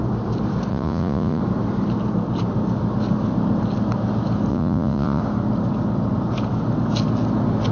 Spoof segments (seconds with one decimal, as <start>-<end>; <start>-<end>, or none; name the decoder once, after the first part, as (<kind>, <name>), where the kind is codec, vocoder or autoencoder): 0.7-1.4 (vocoder, Vocos); 4.5-5.2